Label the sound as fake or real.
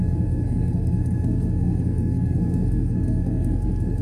fake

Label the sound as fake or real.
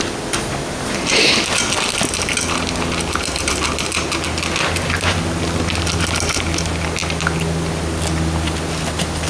real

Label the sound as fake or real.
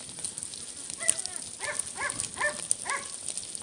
real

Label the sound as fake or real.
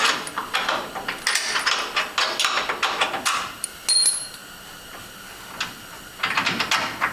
real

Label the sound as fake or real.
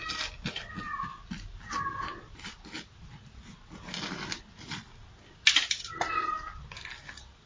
real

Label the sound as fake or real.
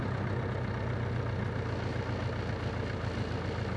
real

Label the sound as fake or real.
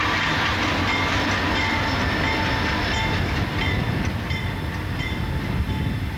real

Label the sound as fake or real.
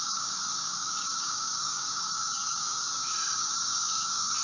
fake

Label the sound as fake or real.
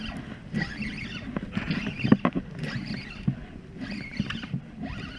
real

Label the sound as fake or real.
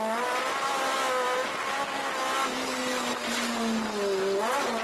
real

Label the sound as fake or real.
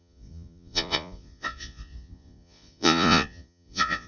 fake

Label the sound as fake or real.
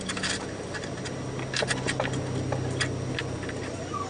real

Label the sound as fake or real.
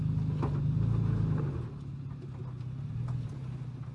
real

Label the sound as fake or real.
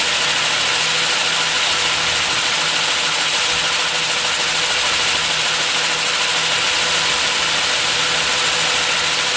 real